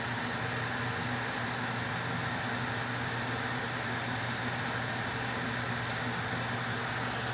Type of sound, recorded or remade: recorded